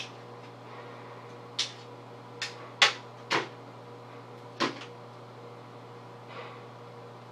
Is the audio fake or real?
real